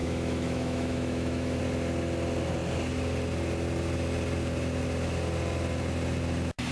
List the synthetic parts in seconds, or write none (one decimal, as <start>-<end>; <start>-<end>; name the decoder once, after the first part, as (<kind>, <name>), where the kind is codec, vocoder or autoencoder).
0.0-1.6 (autoencoder, DAC-VAE)